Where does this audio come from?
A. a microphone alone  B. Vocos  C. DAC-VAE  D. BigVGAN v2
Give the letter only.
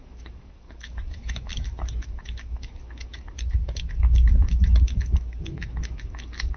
C